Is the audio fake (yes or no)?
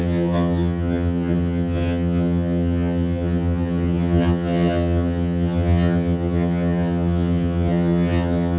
yes